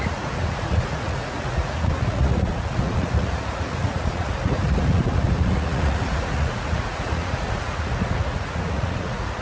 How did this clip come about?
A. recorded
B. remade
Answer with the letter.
B